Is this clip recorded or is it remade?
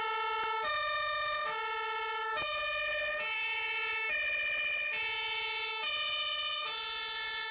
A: recorded